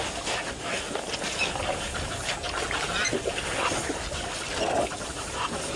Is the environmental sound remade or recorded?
recorded